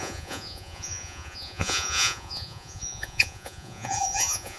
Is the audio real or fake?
fake